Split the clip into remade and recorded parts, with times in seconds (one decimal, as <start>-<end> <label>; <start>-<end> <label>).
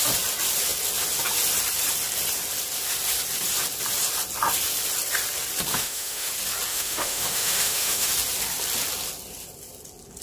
0.0-5.7 recorded; 5.7-6.3 remade; 6.3-6.7 recorded; 6.7-8.1 remade; 8.1-10.2 recorded